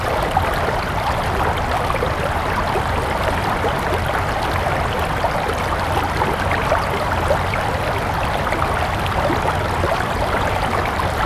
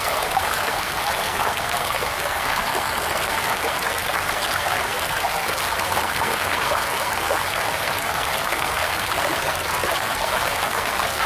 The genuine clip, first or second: first